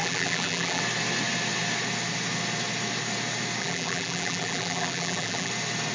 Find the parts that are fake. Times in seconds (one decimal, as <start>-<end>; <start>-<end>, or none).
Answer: 0.0-0.8; 3.6-5.5